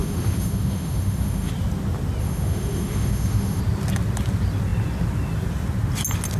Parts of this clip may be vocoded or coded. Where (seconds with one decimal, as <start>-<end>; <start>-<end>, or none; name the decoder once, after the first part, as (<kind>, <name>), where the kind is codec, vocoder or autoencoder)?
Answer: 0.0-1.5 (autoencoder, DAC-VAE); 2.2-3.6